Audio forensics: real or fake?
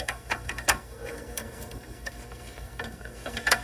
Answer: fake